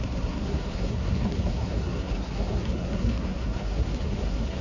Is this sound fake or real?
fake